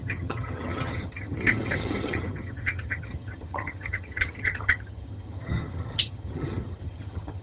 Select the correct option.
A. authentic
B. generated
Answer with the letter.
B